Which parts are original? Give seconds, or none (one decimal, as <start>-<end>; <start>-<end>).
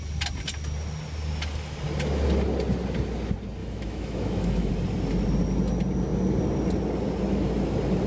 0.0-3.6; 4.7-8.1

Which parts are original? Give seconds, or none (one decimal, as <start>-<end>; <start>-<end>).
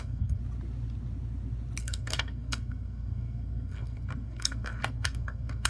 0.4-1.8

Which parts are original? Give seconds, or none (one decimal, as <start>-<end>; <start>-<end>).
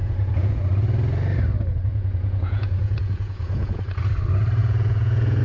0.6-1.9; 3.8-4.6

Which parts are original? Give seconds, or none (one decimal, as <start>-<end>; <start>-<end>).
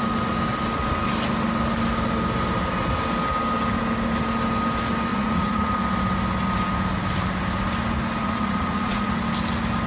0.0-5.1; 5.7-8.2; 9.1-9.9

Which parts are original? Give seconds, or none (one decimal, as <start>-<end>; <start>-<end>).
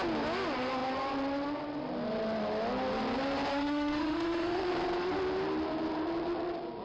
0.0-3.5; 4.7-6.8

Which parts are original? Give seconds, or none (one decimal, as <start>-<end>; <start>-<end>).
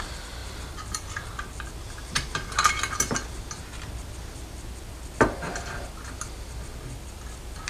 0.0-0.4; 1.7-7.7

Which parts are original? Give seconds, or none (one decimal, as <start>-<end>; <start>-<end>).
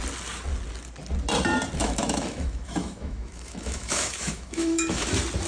0.0-1.8; 5.1-5.5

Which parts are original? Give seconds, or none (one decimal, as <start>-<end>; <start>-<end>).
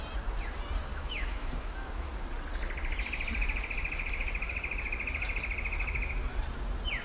0.0-0.9; 2.1-7.0